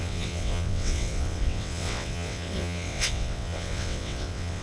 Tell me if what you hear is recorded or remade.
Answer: remade